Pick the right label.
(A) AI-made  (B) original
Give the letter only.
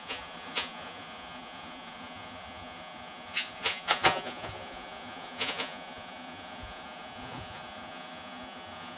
A